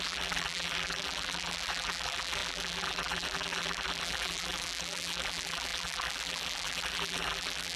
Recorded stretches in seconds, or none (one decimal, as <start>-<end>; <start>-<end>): none